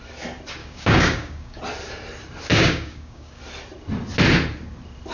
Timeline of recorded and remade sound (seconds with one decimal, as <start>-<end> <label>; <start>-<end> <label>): 0.0-0.6 recorded; 0.6-1.6 remade; 1.6-2.5 recorded; 2.5-3.4 remade; 3.4-5.1 recorded